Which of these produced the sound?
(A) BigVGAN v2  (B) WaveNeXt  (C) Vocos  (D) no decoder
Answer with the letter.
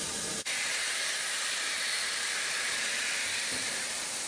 A